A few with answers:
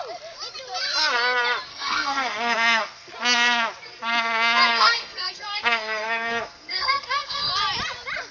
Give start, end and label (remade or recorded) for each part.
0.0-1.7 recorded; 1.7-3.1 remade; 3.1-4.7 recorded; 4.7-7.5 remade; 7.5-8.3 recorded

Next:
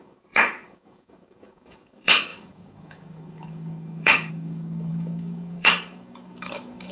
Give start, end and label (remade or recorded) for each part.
0.0-6.9 remade

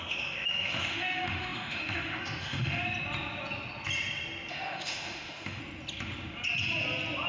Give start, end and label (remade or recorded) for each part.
0.0-2.8 remade; 2.8-4.5 recorded; 4.5-5.6 remade; 5.6-7.3 recorded

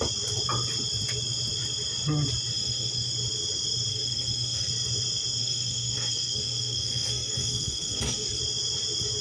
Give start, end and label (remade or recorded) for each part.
0.0-2.5 recorded; 2.5-3.1 remade; 3.1-3.9 recorded; 3.9-4.7 remade; 4.7-5.4 recorded; 5.4-8.4 remade; 8.4-9.2 recorded

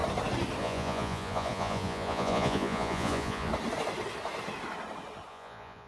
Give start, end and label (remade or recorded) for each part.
0.0-0.6 recorded; 0.6-3.5 remade; 3.5-5.3 recorded; 5.3-5.9 remade

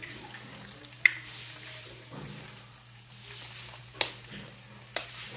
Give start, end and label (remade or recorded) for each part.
0.0-3.2 remade; 3.2-5.4 recorded